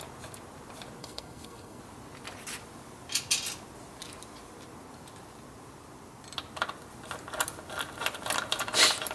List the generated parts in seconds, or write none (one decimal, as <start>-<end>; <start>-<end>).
1.0-1.8

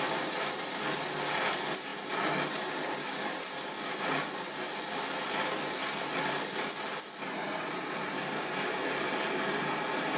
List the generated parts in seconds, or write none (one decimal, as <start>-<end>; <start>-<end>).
none

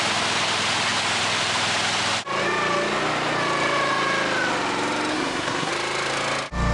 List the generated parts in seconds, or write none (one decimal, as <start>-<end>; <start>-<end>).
5.1-5.7

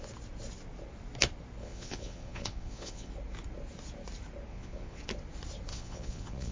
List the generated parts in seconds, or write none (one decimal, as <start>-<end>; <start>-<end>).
1.6-3.1; 4.5-5.0; 5.7-6.5